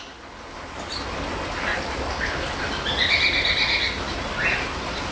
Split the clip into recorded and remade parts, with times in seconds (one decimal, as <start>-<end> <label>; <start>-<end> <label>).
0.0-5.1 recorded